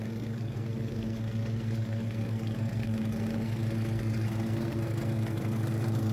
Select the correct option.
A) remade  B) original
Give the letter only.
A